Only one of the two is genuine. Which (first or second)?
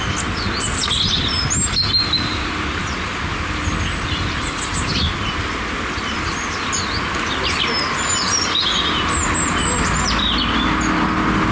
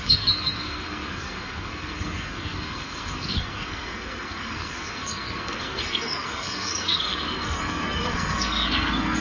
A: first